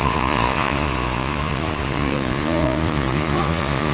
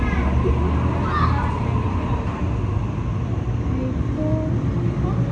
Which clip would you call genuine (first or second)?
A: second